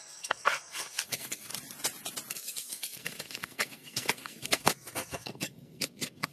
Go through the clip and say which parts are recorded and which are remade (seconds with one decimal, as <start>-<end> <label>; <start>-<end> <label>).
0.0-1.5 remade; 1.5-2.3 recorded; 2.3-6.3 remade